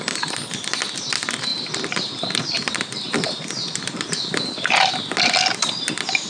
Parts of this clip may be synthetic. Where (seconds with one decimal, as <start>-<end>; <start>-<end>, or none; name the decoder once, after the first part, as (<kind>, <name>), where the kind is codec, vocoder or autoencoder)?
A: 1.5-4.7 (vocoder, BigVGAN v2)